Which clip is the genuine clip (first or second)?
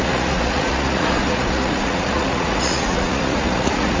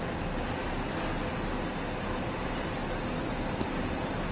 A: second